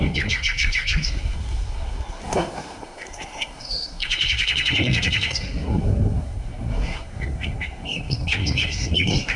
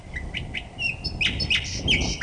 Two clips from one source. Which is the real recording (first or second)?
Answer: second